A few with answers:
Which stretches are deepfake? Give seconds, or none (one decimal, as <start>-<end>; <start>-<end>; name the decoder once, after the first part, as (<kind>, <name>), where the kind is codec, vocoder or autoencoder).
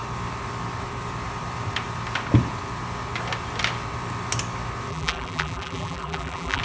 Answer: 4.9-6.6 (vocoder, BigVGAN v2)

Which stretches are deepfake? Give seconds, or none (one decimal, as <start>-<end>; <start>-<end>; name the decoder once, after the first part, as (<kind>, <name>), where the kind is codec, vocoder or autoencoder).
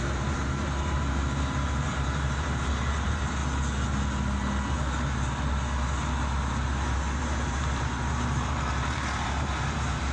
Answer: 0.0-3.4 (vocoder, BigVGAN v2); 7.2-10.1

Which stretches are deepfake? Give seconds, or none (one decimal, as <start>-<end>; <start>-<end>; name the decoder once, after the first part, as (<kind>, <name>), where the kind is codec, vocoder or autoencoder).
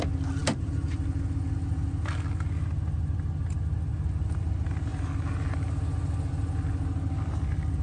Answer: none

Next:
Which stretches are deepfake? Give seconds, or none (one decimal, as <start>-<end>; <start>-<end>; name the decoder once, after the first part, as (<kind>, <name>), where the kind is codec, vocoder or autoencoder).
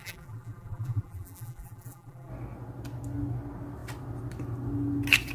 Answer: 0.0-2.3 (vocoder, BigVGAN v2)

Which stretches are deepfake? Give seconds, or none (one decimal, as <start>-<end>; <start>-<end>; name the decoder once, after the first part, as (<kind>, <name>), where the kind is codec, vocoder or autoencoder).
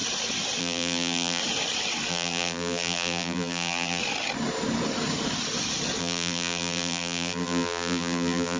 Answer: 0.6-1.4 (vocoder, BigVGAN v2); 2.1-4.0; 6.0-8.6